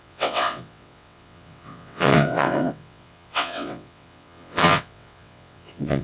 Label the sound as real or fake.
fake